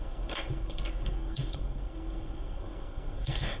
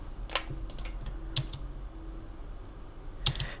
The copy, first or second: first